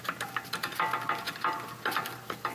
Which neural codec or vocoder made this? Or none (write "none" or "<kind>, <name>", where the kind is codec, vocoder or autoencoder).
none